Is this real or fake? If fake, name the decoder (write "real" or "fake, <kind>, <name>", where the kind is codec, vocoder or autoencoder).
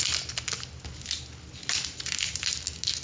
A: real